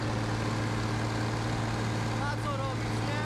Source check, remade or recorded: recorded